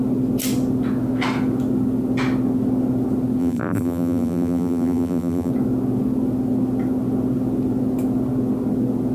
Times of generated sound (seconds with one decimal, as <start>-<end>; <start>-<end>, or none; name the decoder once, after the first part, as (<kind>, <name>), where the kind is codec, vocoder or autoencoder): 3.4-5.5 (vocoder, BigVGAN v2)